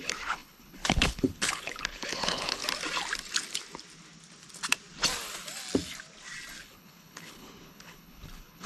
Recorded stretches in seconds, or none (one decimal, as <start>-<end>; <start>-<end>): 2.6-6.6